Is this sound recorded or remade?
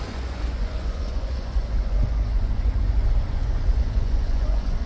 remade